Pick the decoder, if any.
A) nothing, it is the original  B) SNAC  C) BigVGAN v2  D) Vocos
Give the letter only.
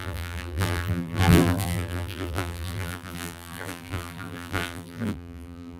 C